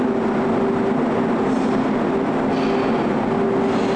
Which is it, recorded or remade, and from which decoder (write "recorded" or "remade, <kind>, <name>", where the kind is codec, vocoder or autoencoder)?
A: recorded